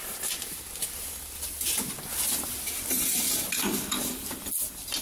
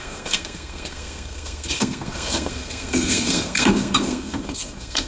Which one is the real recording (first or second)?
first